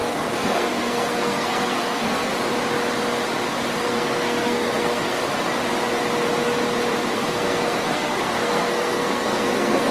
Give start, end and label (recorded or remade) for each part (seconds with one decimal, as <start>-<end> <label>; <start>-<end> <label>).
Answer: 0.0-2.3 remade; 2.3-3.8 recorded; 3.8-5.2 remade; 5.2-7.1 recorded; 7.1-9.9 remade